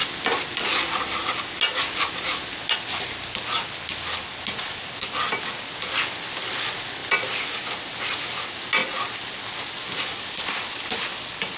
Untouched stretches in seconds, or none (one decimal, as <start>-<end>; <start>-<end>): 0.0-7.0; 8.0-8.8; 10.8-11.6